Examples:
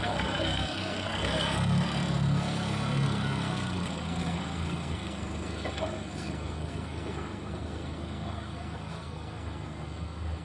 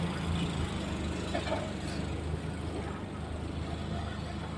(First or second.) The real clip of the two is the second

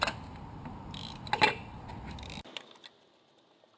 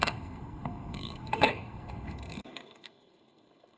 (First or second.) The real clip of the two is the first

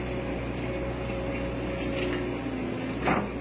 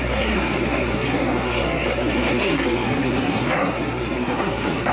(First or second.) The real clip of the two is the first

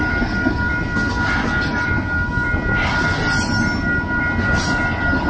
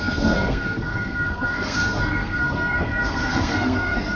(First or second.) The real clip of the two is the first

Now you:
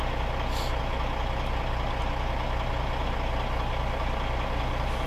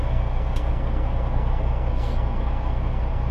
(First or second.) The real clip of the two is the first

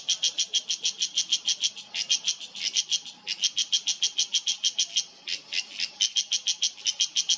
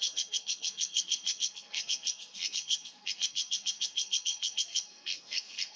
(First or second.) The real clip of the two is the first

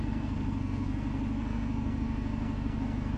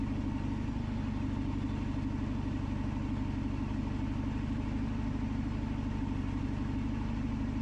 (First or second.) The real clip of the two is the second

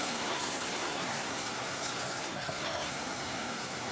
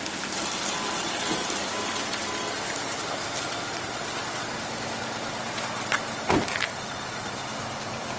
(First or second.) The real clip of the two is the second